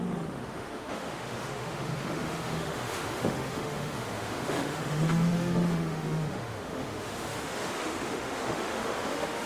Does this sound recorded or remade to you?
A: remade